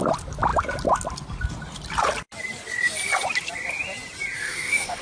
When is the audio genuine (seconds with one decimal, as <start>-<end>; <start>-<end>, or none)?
0.0-4.4